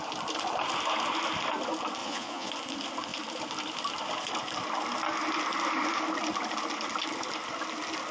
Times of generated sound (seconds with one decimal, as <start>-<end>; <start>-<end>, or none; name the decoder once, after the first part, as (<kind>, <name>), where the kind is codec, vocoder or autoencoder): 2.0-2.5 (vocoder, Vocos)